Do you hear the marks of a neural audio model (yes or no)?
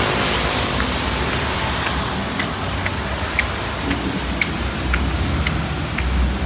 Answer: no